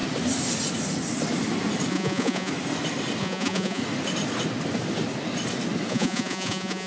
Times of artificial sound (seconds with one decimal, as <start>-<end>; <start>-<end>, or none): 1.9-2.5; 3.2-3.8; 5.9-6.9